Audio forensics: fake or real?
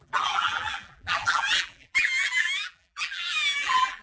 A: fake